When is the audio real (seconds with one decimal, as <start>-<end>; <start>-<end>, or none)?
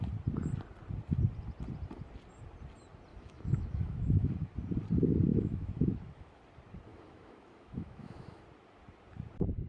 0.0-3.1; 4.3-5.3; 6.4-6.9; 8.4-9.7